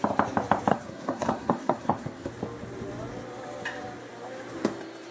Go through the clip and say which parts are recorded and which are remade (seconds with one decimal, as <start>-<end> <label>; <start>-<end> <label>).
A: 0.0-0.7 recorded; 0.7-2.3 remade; 2.3-5.1 recorded